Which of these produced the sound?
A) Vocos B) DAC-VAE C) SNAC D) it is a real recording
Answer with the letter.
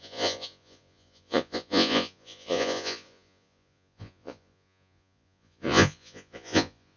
A